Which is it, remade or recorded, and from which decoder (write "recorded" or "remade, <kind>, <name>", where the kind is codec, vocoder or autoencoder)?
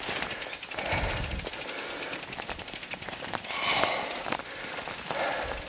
recorded